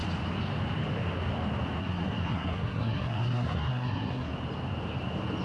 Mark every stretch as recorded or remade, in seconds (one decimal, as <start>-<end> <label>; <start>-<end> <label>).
0.0-1.8 recorded; 1.8-4.3 remade; 4.3-5.4 recorded